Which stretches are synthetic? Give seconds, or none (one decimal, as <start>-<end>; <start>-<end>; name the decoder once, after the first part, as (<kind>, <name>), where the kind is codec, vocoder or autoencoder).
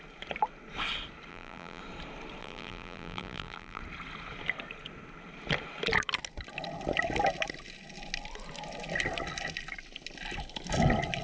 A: 1.3-1.8 (vocoder, BigVGAN v2); 2.4-3.8